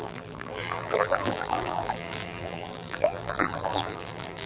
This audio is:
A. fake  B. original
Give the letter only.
A